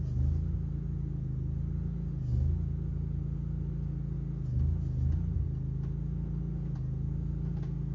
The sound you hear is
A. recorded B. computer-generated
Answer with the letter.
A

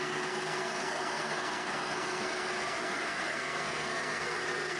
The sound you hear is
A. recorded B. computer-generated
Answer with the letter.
B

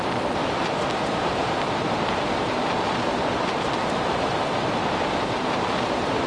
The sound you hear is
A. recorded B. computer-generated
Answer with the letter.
B